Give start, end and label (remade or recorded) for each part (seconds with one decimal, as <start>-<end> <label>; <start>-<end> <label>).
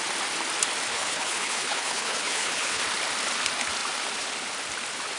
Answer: 0.0-0.9 recorded; 0.9-2.8 remade; 2.8-5.2 recorded